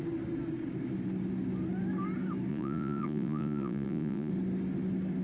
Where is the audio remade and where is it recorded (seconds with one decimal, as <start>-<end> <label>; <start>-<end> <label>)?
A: 0.0-2.5 recorded; 2.5-4.3 remade; 4.3-5.2 recorded